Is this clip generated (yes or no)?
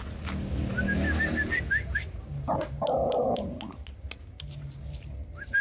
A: no